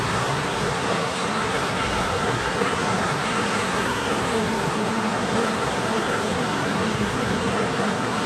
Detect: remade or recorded remade